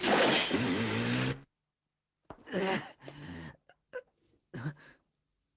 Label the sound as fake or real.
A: real